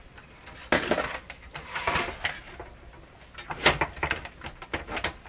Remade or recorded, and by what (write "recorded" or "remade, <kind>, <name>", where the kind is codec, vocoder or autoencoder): recorded